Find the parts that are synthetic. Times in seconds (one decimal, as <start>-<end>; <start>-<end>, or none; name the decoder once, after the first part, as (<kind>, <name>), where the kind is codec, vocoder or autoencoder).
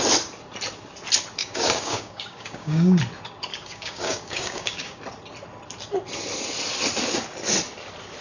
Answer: 1.4-3.0 (codec, DAC); 3.5-5.0